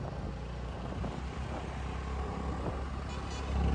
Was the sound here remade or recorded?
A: recorded